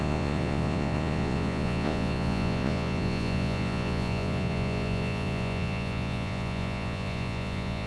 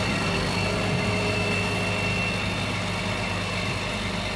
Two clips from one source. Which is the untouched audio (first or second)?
second